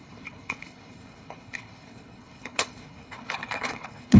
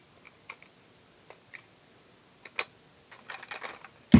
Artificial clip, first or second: first